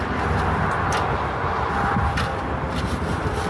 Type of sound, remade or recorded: recorded